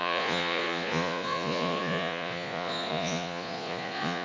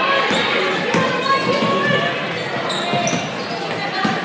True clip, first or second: second